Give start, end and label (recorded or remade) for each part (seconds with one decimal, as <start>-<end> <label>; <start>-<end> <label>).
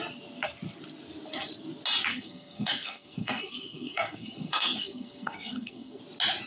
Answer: 0.0-2.1 recorded; 2.1-6.0 remade; 6.0-6.5 recorded